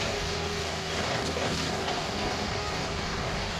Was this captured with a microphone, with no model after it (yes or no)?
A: no